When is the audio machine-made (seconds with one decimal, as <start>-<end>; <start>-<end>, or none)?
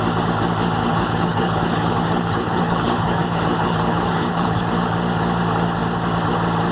0.8-4.7